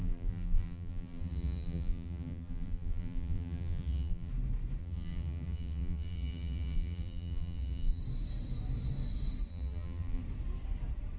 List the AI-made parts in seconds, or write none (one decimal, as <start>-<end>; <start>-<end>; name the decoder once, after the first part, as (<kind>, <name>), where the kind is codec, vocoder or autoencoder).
0.0-4.3 (vocoder, BigVGAN v2); 4.8-8.0; 9.5-10.2